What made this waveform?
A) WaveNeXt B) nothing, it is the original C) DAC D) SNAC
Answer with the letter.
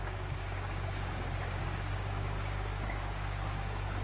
C